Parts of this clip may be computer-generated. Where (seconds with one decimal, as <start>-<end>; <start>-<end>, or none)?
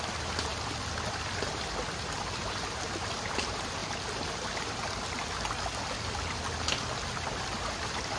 none